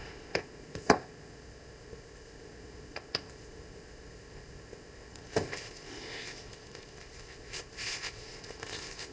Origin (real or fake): fake